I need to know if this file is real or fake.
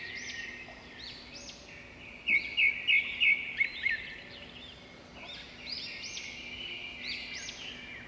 real